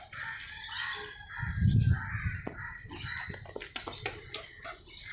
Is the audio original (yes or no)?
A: yes